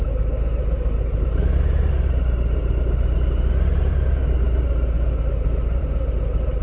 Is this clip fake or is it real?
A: real